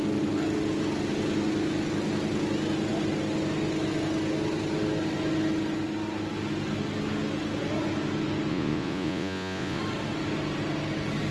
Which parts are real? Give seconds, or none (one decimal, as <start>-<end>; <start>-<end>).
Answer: 0.0-8.5; 9.8-11.3